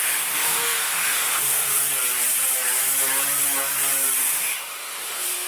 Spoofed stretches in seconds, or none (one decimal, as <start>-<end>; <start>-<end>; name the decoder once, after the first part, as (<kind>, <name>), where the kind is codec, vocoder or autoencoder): 0.0-1.8 (autoencoder, DAC-VAE); 4.2-5.5